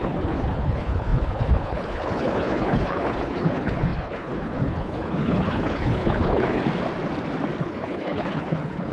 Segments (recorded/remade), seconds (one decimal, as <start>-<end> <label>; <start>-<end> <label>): 0.0-6.6 remade; 6.6-7.6 recorded; 7.6-8.9 remade